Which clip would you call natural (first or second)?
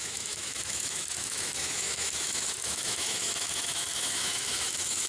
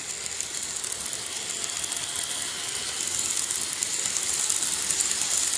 second